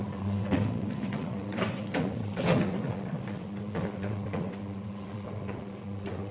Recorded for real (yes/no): no